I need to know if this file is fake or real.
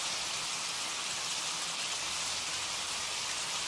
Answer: real